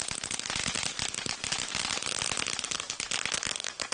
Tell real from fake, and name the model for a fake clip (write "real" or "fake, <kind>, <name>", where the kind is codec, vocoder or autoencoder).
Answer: real